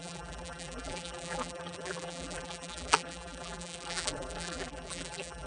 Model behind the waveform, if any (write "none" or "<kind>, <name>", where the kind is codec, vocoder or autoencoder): vocoder, BigVGAN v2